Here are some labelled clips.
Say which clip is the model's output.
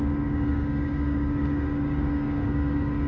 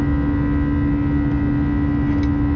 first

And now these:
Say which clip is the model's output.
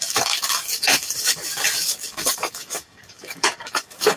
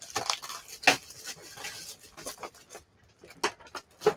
first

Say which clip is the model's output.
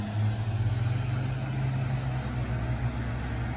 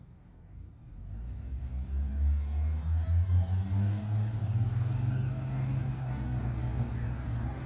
second